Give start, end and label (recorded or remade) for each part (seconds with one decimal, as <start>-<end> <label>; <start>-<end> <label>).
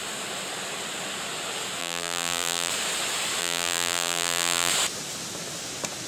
0.0-1.8 recorded; 1.8-2.7 remade; 2.7-3.4 recorded; 3.4-4.7 remade; 4.7-6.1 recorded